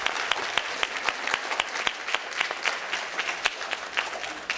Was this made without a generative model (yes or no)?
yes